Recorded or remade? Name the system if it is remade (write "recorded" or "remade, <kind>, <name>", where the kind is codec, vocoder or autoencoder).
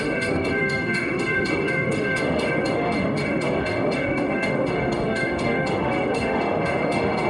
remade, autoencoder, DAC-VAE